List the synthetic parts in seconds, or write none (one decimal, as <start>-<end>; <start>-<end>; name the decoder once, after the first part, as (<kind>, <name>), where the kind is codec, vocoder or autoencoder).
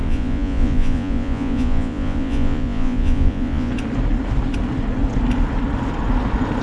0.0-3.7 (vocoder, Vocos)